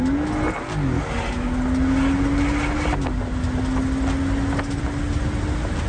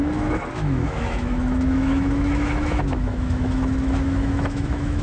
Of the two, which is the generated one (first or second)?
second